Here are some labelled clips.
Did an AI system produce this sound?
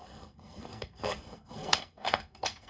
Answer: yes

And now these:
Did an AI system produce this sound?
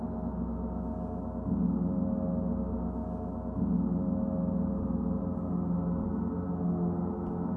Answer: no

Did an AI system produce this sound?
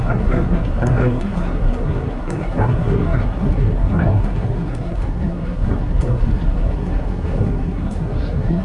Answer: yes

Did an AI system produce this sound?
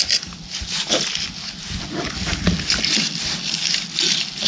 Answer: no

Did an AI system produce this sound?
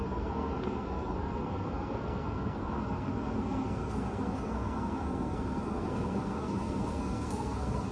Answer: yes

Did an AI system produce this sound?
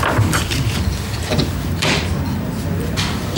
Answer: no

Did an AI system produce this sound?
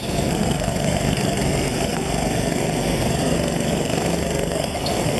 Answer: yes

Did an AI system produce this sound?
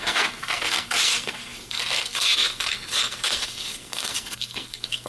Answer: yes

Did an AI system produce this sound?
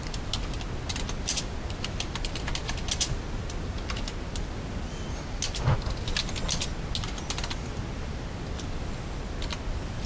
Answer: no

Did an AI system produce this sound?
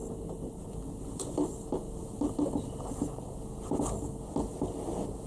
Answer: no